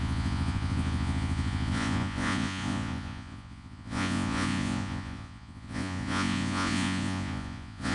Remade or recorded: remade